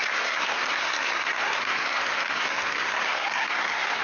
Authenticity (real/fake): fake